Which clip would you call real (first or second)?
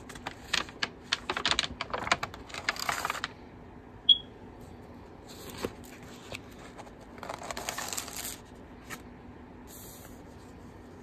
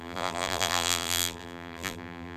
first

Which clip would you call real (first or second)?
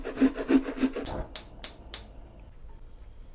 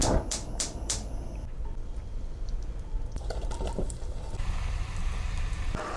first